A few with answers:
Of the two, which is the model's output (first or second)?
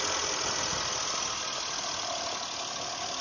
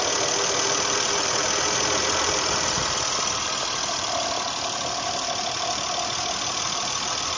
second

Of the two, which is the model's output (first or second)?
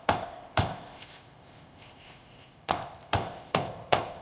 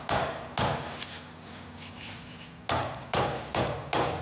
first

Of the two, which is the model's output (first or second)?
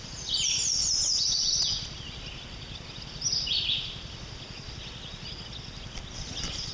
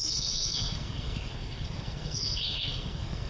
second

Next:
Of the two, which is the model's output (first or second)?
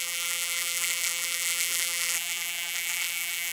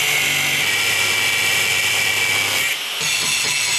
first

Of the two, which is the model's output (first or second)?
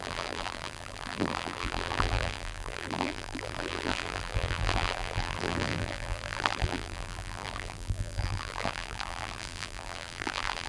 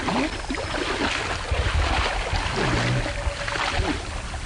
first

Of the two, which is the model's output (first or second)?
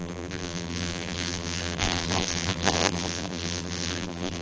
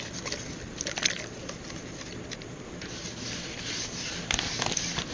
first